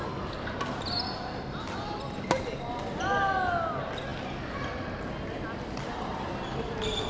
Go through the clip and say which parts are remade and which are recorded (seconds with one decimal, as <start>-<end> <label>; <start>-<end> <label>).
0.0-7.1 recorded